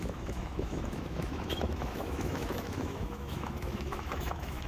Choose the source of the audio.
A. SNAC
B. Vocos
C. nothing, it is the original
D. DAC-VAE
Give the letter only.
D